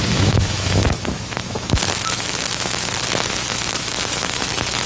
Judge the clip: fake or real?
fake